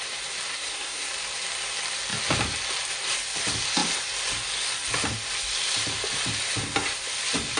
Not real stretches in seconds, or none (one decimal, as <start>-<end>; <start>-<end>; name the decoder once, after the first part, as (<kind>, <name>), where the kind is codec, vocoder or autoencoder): 0.5-1.1 (codec, SNAC)